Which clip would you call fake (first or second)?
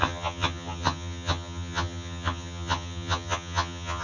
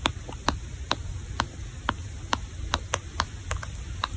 first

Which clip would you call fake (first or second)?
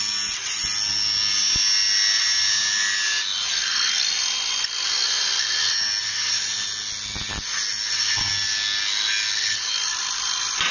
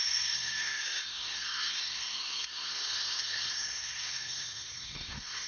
second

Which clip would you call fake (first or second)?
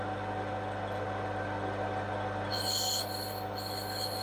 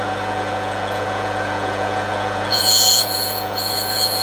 second